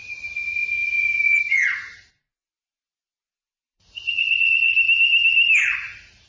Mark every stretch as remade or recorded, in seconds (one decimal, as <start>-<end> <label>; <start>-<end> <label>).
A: 0.0-4.7 remade; 4.7-5.6 recorded; 5.6-6.3 remade